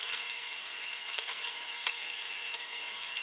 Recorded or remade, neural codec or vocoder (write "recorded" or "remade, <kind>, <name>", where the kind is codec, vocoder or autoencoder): remade, codec, SNAC